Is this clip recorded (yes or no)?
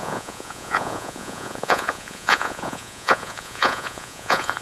no